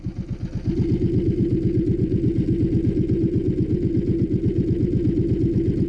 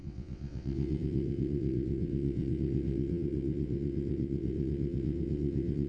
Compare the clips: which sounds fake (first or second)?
second